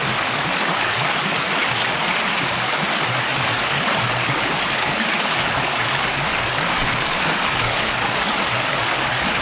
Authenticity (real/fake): fake